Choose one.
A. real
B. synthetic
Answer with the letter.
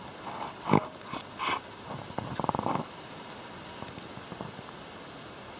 A